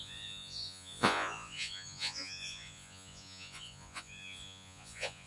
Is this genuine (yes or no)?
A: no